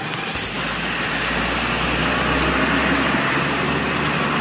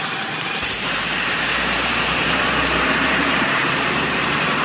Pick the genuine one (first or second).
first